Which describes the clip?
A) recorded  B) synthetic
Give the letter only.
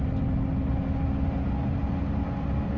A